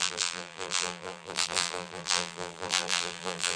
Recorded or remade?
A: remade